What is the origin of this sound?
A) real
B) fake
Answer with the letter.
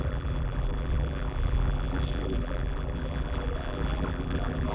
B